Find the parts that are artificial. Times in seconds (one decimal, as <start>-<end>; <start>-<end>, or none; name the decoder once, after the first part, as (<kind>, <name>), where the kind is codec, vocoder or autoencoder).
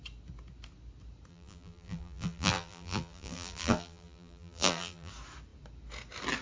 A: 1.3-5.1 (vocoder, BigVGAN v2)